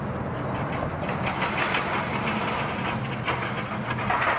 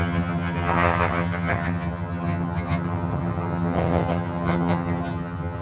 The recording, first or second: first